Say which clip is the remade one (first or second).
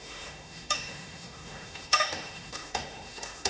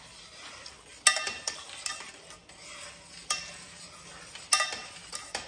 first